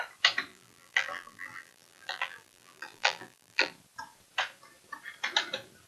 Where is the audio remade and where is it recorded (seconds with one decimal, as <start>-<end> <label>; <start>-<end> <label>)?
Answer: 0.0-0.5 recorded; 0.5-3.7 remade; 3.7-5.9 recorded